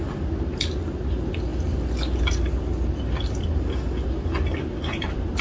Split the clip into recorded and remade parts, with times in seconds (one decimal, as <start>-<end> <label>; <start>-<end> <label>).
0.0-5.4 recorded